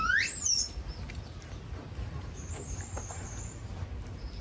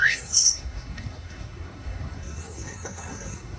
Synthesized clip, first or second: second